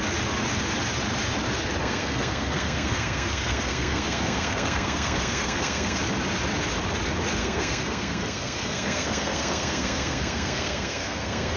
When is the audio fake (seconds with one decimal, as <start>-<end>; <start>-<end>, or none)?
1.8-6.0; 7.4-11.6